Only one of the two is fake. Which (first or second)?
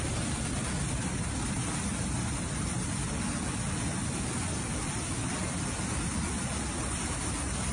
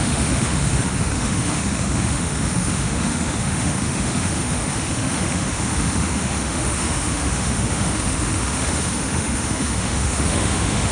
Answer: second